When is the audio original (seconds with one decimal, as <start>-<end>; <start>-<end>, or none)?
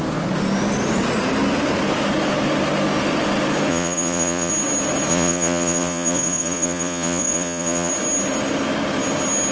0.0-3.7; 4.5-5.1; 7.9-9.5